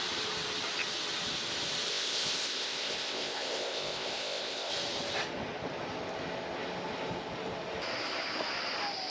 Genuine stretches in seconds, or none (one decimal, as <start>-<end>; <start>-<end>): 0.0-1.9; 4.7-9.1